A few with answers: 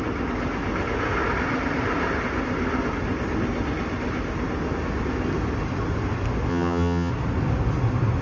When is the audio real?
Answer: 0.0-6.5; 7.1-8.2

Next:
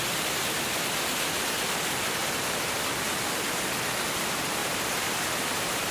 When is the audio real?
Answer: 0.0-2.2; 2.7-4.6

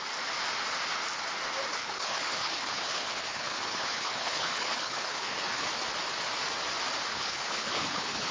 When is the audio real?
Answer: 0.0-1.7; 5.7-7.1

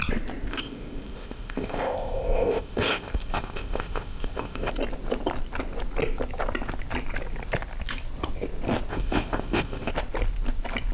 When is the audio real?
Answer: 0.0-0.5; 4.7-8.9; 9.9-10.9

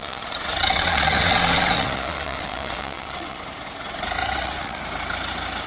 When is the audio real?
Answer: 3.4-4.2; 4.8-5.7

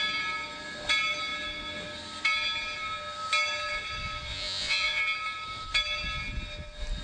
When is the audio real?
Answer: 0.0-4.3; 5.0-7.0

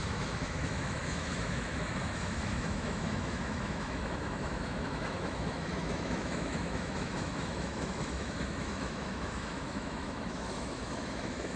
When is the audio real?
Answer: none

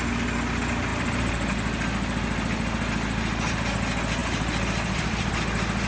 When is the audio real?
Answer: 0.0-4.2; 5.3-5.9